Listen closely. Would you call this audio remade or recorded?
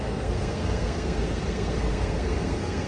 remade